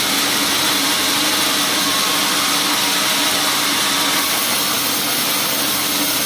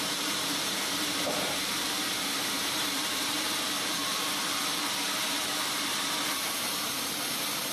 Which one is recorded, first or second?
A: first